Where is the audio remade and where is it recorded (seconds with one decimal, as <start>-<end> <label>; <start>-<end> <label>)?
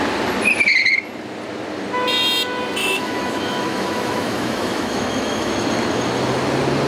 0.0-2.8 recorded; 2.8-5.5 remade; 5.5-6.9 recorded